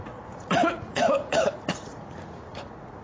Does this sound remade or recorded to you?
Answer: remade